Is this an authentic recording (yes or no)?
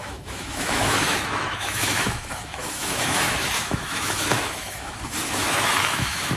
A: no